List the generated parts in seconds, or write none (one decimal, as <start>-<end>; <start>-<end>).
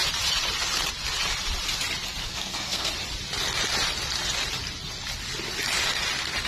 2.2-2.9